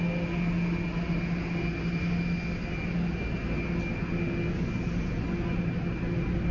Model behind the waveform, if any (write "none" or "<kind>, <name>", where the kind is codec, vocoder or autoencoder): none